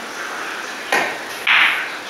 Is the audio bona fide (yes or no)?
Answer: yes